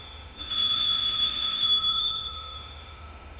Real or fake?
fake